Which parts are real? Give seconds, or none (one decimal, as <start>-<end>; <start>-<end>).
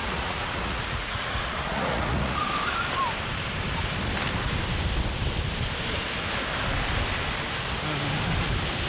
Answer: 2.4-8.9